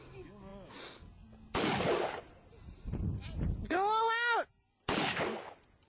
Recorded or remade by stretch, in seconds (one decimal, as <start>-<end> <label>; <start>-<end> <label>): 0.0-5.9 recorded